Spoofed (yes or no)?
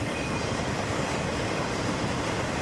no